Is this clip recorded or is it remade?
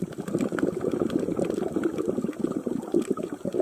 recorded